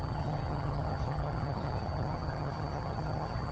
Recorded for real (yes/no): no